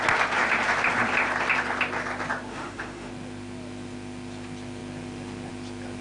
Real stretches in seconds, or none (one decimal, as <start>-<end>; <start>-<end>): 0.0-2.5; 3.1-6.0